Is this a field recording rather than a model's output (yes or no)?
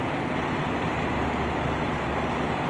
yes